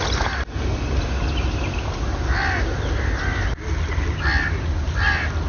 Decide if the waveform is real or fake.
real